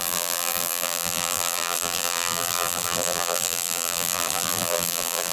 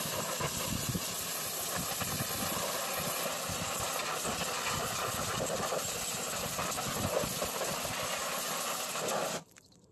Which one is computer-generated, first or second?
first